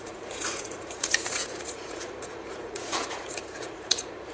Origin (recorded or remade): remade